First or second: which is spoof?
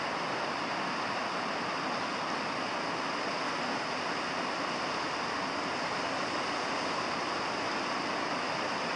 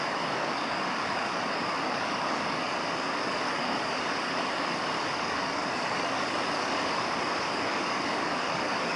second